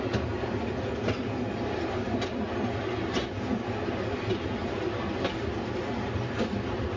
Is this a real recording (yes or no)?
yes